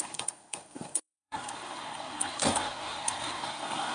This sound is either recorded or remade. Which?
remade